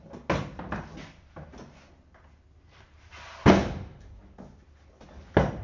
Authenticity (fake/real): real